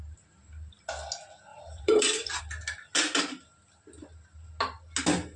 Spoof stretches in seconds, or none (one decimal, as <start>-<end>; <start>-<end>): 1.5-2.4